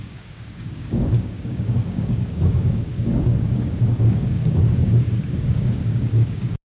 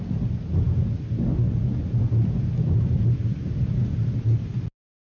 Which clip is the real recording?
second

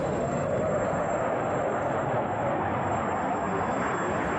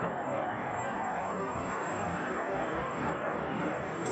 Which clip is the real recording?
first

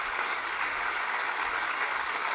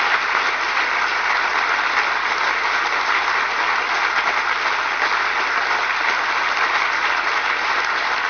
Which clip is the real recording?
second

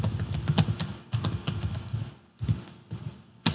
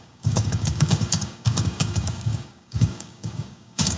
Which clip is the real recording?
first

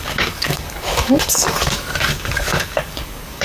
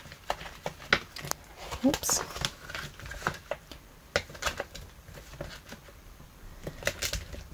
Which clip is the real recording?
second